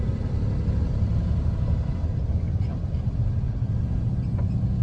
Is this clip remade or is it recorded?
recorded